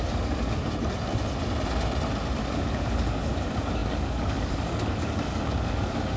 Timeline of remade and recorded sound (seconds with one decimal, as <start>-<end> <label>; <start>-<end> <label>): 0.0-0.7 remade; 0.7-2.4 recorded; 2.4-6.2 remade